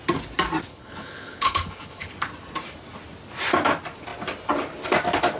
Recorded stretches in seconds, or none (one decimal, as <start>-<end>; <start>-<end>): 0.0-0.7; 2.1-5.4